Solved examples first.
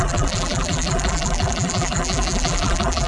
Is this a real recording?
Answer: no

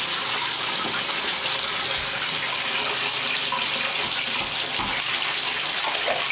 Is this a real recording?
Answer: yes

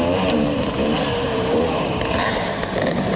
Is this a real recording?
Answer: no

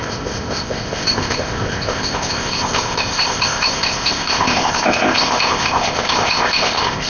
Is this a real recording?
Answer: no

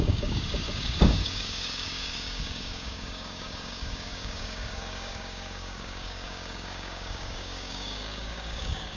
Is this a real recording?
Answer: no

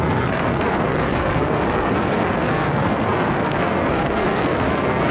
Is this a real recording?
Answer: no